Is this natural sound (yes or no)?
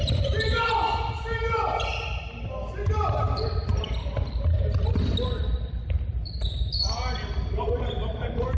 yes